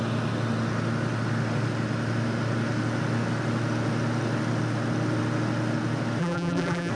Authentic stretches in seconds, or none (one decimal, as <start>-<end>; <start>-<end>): 0.0-6.2